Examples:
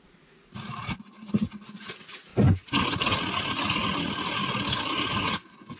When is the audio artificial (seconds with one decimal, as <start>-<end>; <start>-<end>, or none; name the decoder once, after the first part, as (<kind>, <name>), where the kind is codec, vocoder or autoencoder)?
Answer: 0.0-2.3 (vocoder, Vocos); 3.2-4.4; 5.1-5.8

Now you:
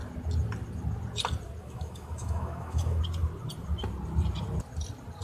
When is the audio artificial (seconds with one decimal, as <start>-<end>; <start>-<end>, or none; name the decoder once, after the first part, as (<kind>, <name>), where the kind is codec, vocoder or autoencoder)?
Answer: 1.6-3.0 (autoencoder, DAC-VAE)

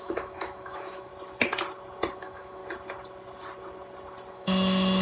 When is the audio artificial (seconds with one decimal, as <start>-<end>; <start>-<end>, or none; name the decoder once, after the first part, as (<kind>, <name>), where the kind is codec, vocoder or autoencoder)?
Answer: 0.0-1.1 (autoencoder, DAC-VAE); 2.2-2.6; 4.3-5.0

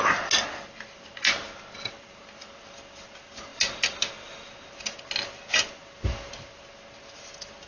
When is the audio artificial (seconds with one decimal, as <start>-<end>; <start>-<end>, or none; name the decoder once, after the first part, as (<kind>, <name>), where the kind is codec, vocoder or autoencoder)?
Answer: none

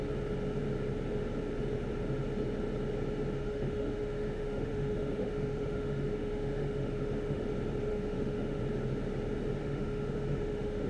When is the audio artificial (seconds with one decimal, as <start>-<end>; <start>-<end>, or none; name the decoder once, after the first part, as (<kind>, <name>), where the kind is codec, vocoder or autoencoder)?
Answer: 3.4-7.4 (autoencoder, DAC-VAE); 7.9-8.6; 9.6-10.9